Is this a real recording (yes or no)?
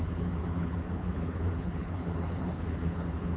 no